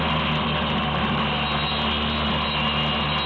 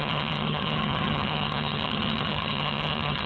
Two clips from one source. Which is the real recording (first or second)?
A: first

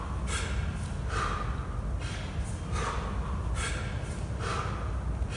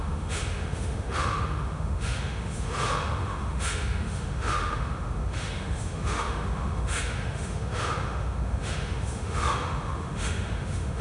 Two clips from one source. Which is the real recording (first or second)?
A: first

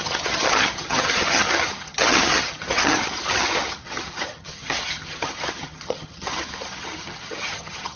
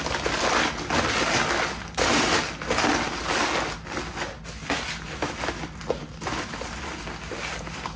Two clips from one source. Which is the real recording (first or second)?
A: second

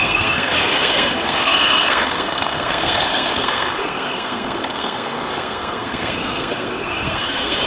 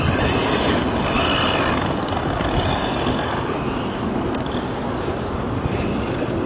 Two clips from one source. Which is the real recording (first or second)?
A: second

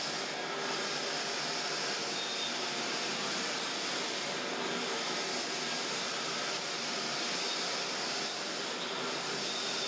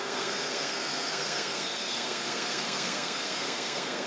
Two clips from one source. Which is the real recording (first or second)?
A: first